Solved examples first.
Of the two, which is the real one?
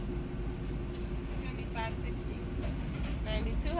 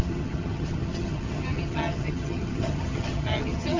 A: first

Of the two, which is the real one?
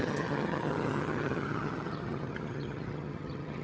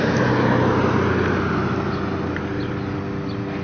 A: second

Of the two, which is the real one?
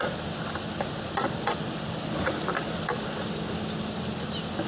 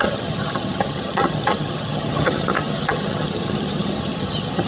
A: first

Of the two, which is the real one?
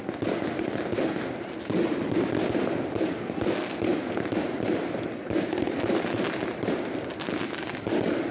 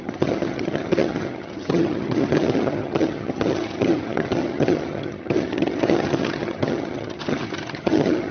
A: first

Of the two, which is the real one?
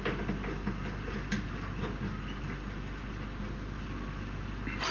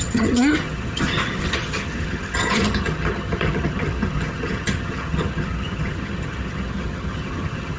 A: first